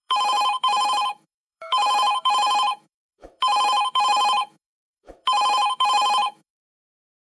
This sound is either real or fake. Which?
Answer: fake